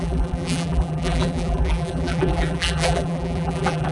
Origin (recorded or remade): remade